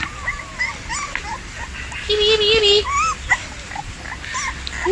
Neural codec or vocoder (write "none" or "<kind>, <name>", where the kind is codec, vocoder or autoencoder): none